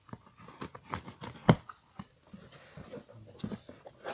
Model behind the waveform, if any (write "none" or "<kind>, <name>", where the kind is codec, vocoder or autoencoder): none